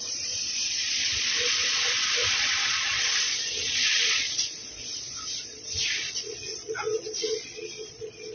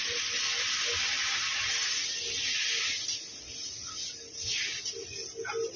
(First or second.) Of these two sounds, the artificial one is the first